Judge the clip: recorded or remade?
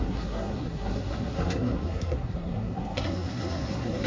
remade